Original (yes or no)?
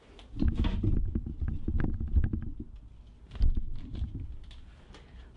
yes